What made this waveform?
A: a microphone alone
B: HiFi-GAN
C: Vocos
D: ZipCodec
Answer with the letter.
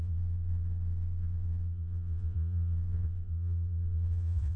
C